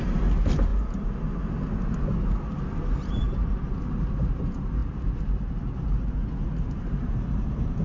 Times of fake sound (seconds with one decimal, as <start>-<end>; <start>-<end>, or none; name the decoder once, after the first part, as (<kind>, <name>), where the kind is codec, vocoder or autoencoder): 0.0-0.7 (vocoder, BigVGAN v2); 2.6-4.8; 6.7-7.8